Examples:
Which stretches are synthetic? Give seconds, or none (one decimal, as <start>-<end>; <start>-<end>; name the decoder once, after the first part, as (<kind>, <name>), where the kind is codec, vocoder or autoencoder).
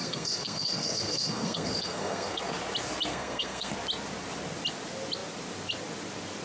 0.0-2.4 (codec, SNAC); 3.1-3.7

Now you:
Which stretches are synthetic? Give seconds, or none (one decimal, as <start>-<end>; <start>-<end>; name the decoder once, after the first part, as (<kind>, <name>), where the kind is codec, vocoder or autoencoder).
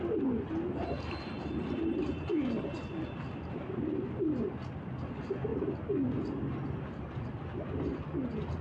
none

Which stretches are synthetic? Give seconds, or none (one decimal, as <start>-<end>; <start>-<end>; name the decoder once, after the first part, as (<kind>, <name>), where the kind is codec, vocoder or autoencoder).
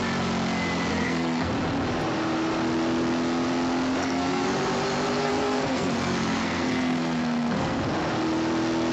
0.9-1.5 (codec, SNAC); 4.0-4.5; 5.2-7.8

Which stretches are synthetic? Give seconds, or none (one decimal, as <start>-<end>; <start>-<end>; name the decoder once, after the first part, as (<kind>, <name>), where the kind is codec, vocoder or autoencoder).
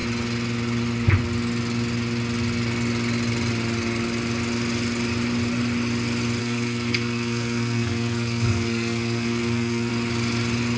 6.4-9.9 (codec, SNAC)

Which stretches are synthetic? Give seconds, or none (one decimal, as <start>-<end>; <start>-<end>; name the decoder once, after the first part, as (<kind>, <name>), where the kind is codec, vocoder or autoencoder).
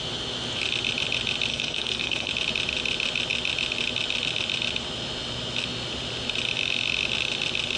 1.5-2.3 (codec, SNAC)